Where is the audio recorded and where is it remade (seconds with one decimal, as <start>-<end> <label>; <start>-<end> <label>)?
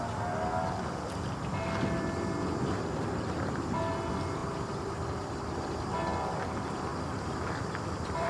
0.0-4.4 recorded; 4.4-5.6 remade; 5.6-6.9 recorded; 6.9-8.3 remade